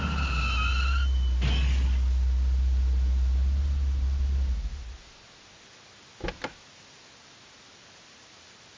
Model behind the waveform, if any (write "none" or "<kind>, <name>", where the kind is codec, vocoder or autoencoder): none